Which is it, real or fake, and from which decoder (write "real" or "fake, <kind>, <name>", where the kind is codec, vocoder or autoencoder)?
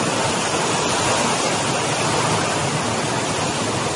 real